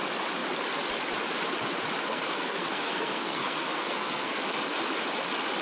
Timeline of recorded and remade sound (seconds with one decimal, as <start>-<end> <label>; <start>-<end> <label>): 0.0-2.1 recorded; 2.1-4.4 remade; 4.4-5.6 recorded